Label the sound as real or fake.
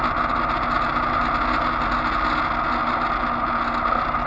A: real